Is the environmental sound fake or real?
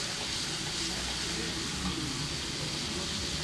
real